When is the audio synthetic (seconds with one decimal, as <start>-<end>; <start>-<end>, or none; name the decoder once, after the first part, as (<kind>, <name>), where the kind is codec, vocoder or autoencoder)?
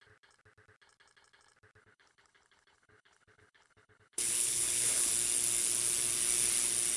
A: 1.8-5.1 (codec, HILCodec)